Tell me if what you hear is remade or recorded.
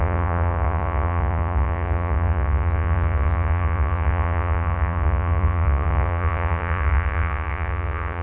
remade